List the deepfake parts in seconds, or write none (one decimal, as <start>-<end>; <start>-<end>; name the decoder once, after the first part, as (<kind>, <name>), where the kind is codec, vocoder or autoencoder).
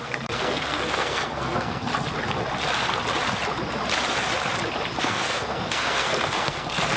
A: 0.0-1.9 (codec, SNAC); 5.0-7.0